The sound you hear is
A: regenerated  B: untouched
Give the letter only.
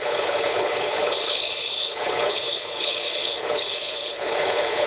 A